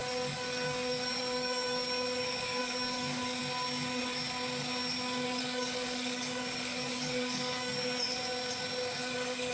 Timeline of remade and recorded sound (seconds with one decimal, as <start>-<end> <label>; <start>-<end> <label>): 0.0-3.4 remade; 3.4-5.4 recorded; 5.4-8.1 remade; 8.1-9.0 recorded; 9.0-9.5 remade